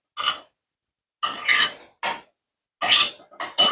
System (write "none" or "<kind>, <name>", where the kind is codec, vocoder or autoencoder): none